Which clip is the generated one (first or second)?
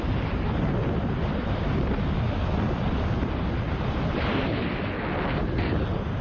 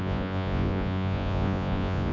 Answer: second